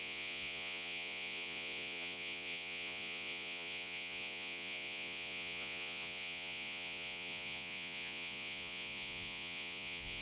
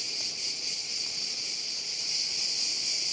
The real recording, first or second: second